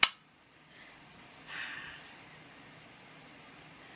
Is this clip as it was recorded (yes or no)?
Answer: yes